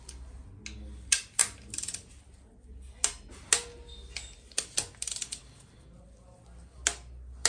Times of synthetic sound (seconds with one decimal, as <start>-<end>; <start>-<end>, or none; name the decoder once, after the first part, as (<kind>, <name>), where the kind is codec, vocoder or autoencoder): none

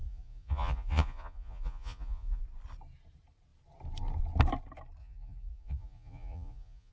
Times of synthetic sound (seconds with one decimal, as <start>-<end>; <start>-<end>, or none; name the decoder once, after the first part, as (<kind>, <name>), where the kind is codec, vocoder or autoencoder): 0.0-2.4 (vocoder, Vocos); 5.0-6.9

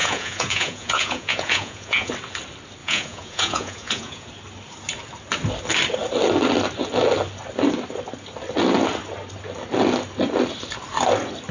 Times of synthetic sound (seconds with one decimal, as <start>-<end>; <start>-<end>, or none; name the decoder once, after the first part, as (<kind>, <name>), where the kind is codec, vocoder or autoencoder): 0.0-2.1 (vocoder, Vocos); 2.8-4.3

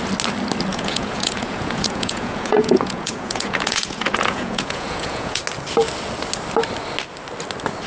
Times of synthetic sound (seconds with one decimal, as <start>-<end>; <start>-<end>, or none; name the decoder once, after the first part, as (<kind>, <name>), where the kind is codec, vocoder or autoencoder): 0.7-5.4 (vocoder, Vocos)

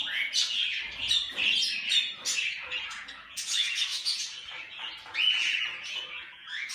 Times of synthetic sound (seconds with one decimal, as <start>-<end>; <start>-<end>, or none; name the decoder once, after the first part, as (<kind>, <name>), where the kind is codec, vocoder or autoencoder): 0.0-0.6 (vocoder, Vocos); 2.6-6.7

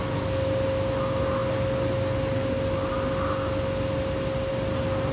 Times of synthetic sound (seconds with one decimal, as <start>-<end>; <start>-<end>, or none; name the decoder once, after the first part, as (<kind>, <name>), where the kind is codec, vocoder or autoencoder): none

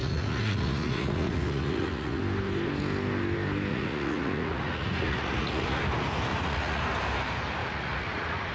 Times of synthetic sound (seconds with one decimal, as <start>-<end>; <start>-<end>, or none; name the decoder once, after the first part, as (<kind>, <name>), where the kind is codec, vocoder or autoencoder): 0.0-2.2 (vocoder, Vocos); 3.7-5.8; 6.3-6.8; 7.6-8.5

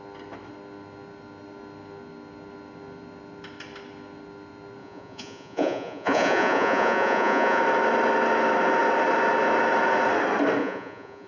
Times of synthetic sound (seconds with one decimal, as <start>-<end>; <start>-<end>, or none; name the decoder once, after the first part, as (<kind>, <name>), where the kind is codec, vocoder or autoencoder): 4.8-7.6 (vocoder, Vocos); 10.6-11.3